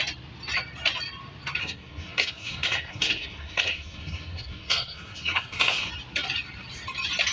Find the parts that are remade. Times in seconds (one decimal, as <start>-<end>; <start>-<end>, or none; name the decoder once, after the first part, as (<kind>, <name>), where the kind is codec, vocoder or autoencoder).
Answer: 1.6-5.9 (codec, SNAC)